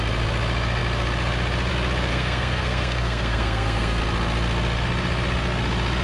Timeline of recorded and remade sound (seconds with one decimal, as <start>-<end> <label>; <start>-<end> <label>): 0.0-2.1 recorded; 2.1-4.0 remade; 4.0-6.0 recorded

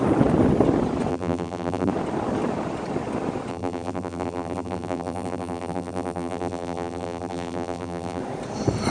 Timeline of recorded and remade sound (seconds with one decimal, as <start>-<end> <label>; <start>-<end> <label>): 0.0-1.1 recorded; 1.1-1.9 remade; 1.9-3.5 recorded; 3.5-8.2 remade; 8.2-8.9 recorded

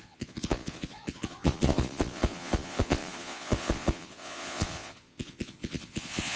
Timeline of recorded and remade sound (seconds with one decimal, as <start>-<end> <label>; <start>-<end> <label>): 0.0-6.4 remade